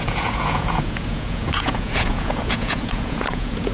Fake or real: fake